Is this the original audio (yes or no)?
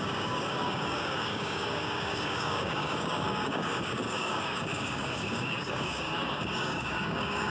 no